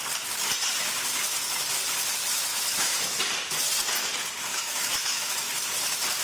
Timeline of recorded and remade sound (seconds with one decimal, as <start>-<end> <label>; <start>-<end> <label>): 0.0-2.5 recorded; 2.5-3.0 remade; 3.0-4.5 recorded; 4.5-5.5 remade; 5.5-6.2 recorded